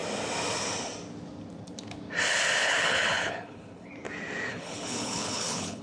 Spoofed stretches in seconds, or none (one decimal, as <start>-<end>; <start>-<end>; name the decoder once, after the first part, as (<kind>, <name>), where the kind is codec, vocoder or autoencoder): 2.6-3.9 (codec, HILCodec); 4.5-5.8

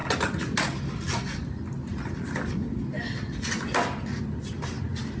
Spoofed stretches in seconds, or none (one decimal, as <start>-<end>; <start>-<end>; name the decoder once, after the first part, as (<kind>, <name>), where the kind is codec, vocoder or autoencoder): none

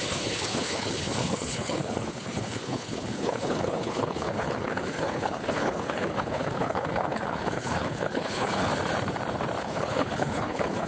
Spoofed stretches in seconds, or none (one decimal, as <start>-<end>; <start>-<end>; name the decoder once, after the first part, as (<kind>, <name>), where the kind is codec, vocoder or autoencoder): 0.0-8.7 (codec, HILCodec); 9.6-10.9

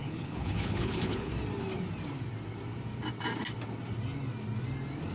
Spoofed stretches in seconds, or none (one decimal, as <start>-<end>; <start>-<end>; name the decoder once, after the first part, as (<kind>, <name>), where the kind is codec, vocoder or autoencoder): 0.0-1.3 (codec, HILCodec)

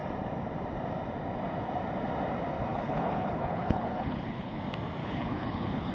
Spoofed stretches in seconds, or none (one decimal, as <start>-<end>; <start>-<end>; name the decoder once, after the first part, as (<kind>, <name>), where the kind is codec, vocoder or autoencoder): 2.7-4.6 (codec, HILCodec); 5.0-5.9

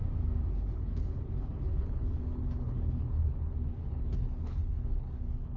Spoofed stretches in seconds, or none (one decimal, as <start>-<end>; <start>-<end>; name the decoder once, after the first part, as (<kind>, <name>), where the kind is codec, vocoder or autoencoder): 0.5-5.6 (codec, HILCodec)